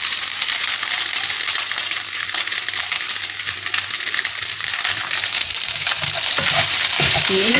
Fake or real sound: fake